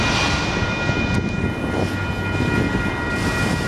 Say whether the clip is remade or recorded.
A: recorded